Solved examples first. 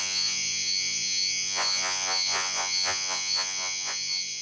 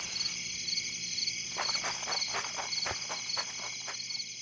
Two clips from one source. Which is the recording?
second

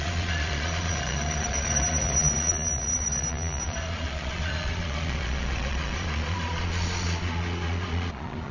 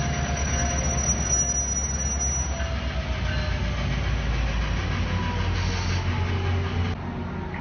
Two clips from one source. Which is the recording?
second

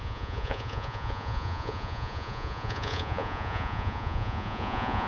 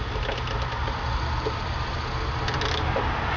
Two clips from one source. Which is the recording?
second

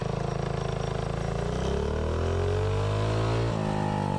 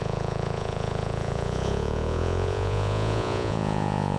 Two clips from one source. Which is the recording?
first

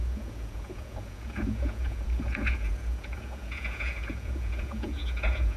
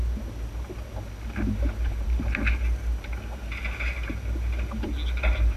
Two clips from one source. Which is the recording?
second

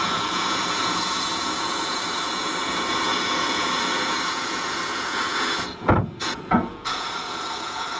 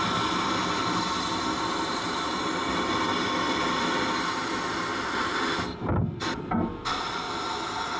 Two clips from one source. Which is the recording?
second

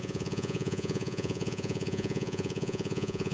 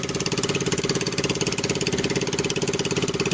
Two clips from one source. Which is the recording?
second